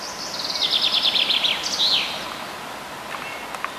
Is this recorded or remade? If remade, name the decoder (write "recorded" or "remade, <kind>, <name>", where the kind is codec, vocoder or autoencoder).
recorded